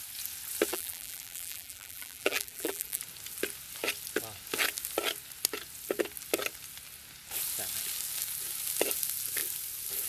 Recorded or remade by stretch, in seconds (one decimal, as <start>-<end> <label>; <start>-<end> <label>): 0.0-0.7 recorded; 0.7-3.0 remade; 3.0-10.1 recorded